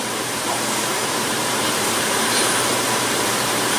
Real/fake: fake